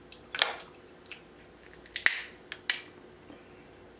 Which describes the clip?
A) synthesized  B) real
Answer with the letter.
B